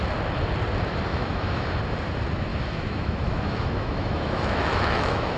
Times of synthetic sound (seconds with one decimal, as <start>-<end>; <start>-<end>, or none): 1.1-1.8; 2.5-5.4